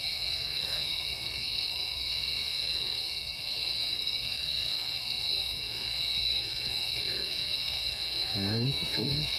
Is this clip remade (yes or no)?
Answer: yes